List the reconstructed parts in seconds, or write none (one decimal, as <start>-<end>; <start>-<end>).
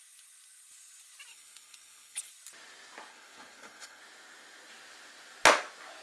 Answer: 1.3-2.3; 3.1-4.0